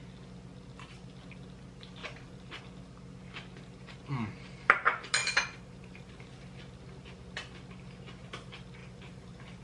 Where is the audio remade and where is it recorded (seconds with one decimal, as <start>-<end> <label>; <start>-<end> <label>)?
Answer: 0.0-2.0 recorded; 2.0-2.6 remade; 2.6-5.2 recorded; 5.2-6.1 remade; 6.1-8.8 recorded; 8.8-9.6 remade